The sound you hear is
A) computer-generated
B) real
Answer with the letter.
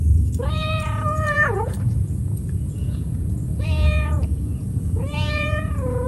A